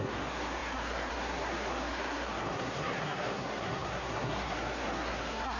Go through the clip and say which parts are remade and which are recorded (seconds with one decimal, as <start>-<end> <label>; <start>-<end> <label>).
0.0-5.6 remade